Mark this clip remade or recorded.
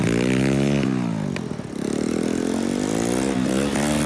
recorded